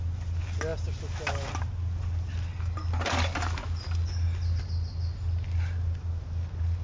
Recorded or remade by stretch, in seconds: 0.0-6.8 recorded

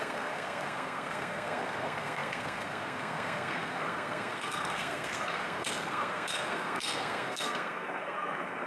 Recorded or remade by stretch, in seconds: 0.0-8.7 remade

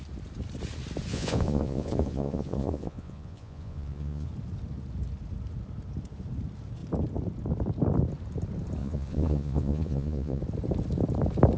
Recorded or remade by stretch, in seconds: 0.0-1.1 recorded; 1.1-4.3 remade; 4.3-8.8 recorded; 8.8-10.4 remade; 10.4-11.6 recorded

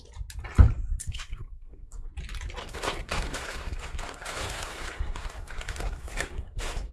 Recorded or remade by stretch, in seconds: 0.0-1.0 recorded; 1.0-2.1 remade; 2.1-2.6 recorded; 2.6-6.9 remade

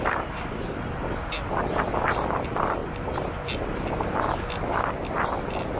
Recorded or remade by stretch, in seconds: 0.0-5.8 recorded

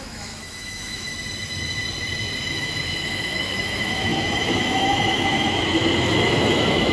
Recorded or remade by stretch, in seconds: 0.0-1.1 remade; 1.1-2.4 recorded; 2.4-6.9 remade

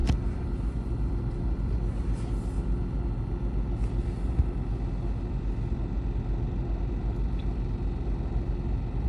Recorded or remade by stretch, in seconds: 0.0-1.4 remade; 1.4-9.1 recorded